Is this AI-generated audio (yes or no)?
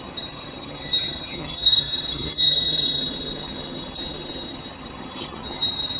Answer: yes